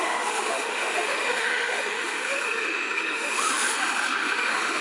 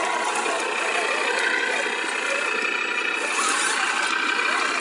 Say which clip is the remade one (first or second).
first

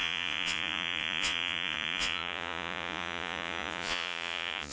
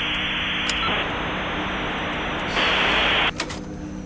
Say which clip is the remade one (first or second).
first